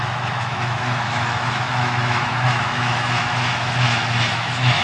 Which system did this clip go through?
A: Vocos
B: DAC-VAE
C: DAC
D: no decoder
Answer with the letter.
B